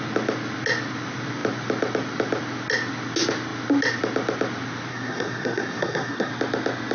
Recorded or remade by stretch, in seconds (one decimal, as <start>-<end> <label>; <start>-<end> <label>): 0.0-4.9 recorded; 4.9-6.3 remade; 6.3-6.9 recorded